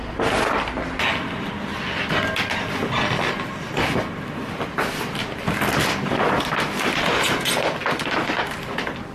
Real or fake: real